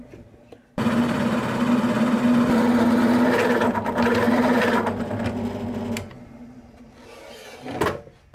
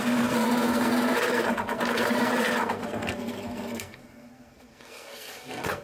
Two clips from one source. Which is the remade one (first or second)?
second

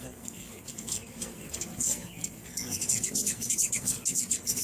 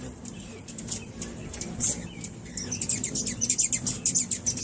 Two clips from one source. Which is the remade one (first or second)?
first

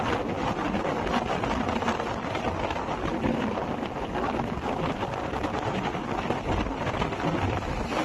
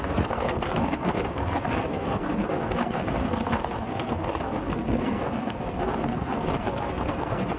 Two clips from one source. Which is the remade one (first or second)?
second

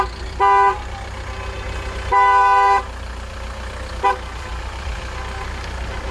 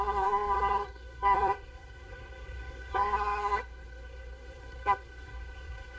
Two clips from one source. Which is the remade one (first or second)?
second